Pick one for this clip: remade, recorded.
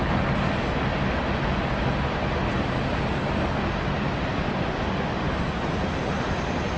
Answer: recorded